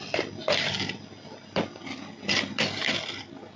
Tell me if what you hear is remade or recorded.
recorded